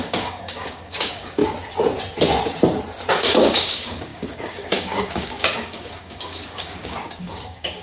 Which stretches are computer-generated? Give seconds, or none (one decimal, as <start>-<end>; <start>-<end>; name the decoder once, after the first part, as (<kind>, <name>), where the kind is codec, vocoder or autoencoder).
0.0-1.4 (codec, DAC); 3.1-7.8